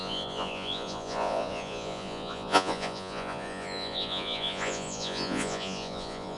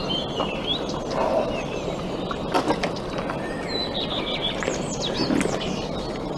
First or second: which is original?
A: second